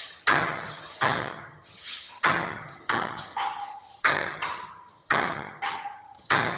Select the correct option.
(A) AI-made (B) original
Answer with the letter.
A